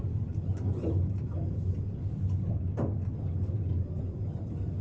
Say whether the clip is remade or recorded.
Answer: recorded